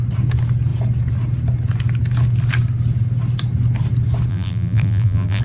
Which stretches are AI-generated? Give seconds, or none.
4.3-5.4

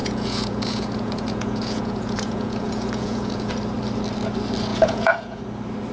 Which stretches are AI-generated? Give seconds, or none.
0.0-3.5; 4.7-5.4

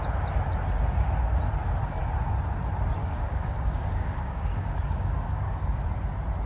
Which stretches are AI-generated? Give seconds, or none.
3.0-5.8